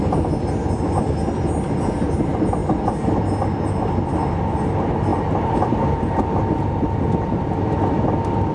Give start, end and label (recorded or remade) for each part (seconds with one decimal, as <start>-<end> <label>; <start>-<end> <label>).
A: 0.0-8.5 recorded

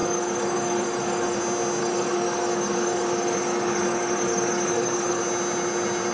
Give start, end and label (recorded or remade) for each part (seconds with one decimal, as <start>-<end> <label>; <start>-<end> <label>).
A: 0.0-1.4 remade; 1.4-1.8 recorded; 1.8-5.2 remade; 5.2-6.1 recorded

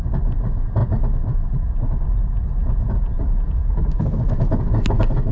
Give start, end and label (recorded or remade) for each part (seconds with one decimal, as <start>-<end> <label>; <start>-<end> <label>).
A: 0.0-2.6 recorded; 2.6-3.7 remade; 3.7-5.3 recorded